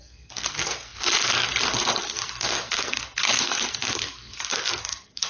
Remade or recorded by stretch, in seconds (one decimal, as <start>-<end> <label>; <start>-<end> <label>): 0.0-5.3 remade